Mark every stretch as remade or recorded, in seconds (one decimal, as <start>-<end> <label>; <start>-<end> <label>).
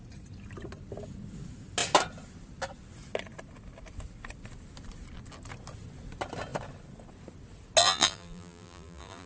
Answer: 0.0-7.8 recorded; 7.8-9.3 remade